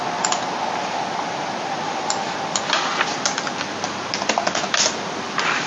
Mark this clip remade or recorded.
recorded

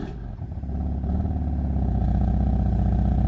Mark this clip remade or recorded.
recorded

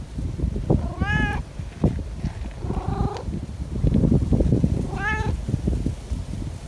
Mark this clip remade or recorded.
recorded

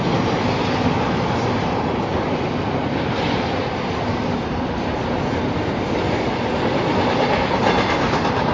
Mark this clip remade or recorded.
recorded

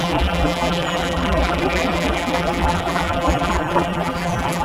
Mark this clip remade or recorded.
remade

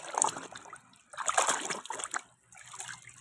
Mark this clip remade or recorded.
recorded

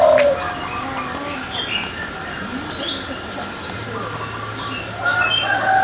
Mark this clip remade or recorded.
recorded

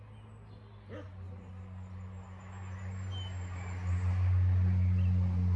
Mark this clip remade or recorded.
recorded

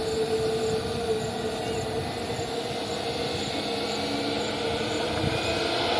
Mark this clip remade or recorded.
recorded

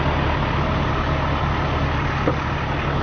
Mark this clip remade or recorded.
recorded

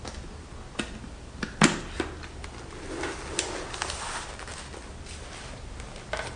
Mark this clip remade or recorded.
recorded